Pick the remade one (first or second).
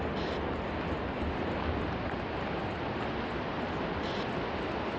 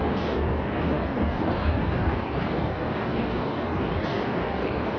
second